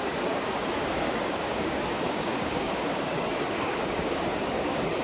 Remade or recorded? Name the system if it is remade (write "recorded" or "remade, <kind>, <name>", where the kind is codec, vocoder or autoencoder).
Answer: remade, codec, DAC